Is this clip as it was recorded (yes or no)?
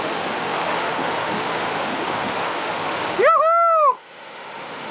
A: no